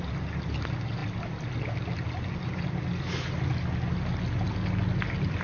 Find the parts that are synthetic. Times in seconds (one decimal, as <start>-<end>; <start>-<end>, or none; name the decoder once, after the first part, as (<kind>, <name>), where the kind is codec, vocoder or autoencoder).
none